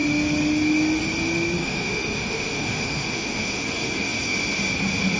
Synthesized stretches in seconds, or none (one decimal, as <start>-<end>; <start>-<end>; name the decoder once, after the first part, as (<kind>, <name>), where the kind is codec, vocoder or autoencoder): 1.6-3.6 (autoencoder, DAC-VAE)